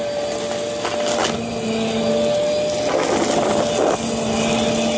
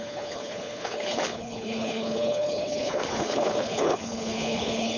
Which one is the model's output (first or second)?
second